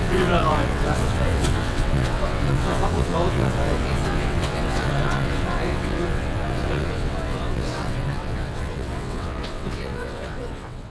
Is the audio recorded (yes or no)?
no